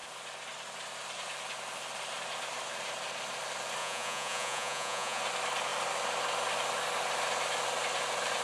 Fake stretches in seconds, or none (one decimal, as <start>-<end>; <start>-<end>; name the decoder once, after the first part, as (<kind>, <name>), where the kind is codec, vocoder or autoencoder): 3.8-5.2 (vocoder, Vocos)